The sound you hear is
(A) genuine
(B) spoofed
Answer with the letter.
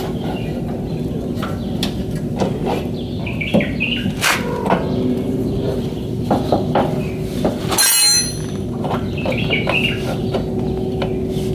A